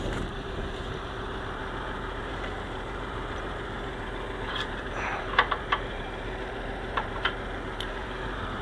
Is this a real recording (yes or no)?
no